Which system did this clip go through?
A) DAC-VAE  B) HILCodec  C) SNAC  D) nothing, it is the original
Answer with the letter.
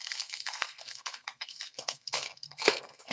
C